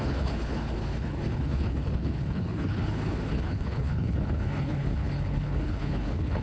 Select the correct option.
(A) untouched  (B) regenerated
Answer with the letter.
B